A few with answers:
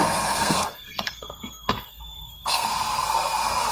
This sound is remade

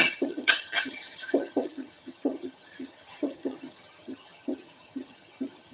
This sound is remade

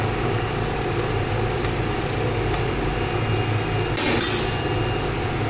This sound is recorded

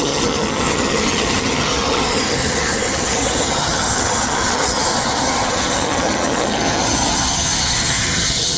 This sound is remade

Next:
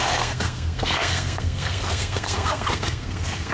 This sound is remade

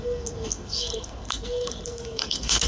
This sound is remade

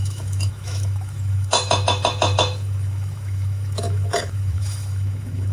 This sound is remade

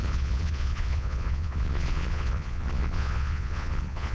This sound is remade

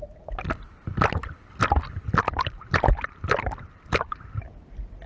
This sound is recorded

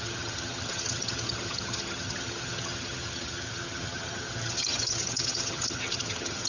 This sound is remade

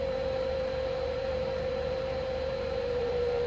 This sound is remade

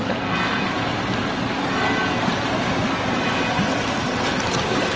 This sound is recorded